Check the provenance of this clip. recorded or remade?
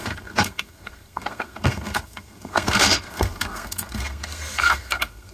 remade